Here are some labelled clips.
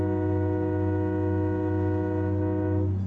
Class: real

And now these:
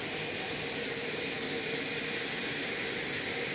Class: real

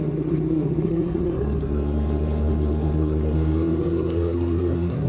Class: fake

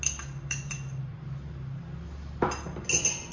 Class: real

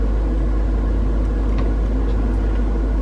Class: real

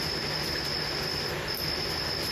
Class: real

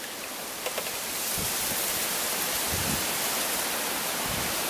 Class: real